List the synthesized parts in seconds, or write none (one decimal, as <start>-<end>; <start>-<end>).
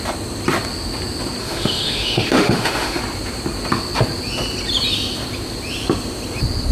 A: 1.4-3.0